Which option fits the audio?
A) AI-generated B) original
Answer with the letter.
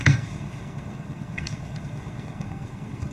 A